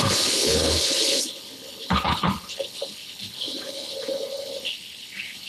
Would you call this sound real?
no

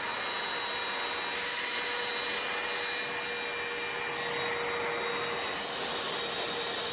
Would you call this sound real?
yes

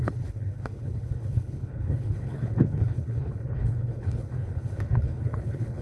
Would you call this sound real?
no